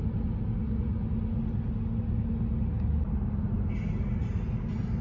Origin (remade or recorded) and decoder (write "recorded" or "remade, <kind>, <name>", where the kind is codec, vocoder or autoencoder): recorded